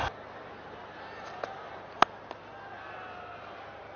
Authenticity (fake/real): real